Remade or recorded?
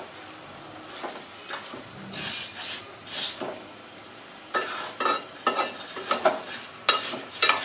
recorded